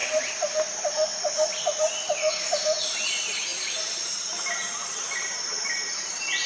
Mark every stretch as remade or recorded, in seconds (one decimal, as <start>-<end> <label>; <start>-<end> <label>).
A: 0.0-6.5 recorded